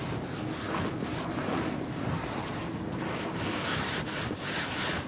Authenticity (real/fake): real